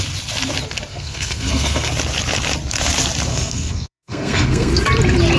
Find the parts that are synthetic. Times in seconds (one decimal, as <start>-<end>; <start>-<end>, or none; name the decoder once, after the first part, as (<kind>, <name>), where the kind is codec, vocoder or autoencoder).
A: 0.9-1.9 (codec, SNAC); 3.3-4.7